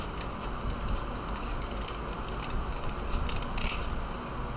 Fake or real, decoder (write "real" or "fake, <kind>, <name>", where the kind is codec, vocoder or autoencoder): real